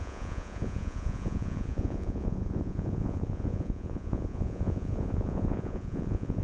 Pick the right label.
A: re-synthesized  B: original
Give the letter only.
A